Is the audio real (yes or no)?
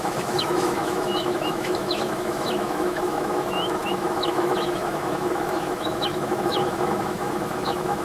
no